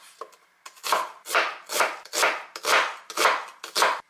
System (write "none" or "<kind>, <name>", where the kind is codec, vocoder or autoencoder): none